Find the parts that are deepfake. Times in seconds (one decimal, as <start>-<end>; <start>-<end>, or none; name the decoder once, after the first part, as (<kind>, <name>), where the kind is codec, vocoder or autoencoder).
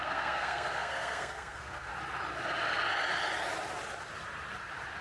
0.0-1.9 (codec, SNAC)